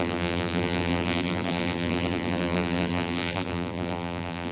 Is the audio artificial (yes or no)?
yes